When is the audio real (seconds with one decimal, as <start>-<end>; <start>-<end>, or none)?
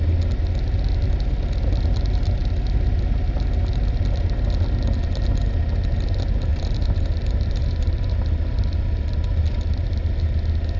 0.0-6.5; 9.0-10.8